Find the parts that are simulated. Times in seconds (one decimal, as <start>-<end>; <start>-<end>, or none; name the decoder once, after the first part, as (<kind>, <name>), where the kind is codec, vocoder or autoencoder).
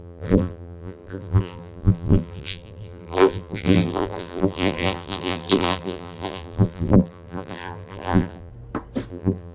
0.0-8.5 (vocoder, BigVGAN v2); 9.1-9.5